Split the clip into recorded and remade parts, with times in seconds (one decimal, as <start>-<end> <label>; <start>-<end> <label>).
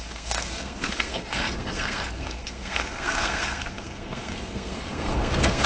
0.0-5.7 remade